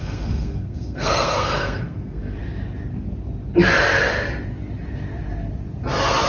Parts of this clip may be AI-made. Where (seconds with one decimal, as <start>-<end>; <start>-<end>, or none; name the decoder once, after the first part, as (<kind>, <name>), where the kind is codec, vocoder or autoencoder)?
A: 0.0-2.2 (codec, SNAC)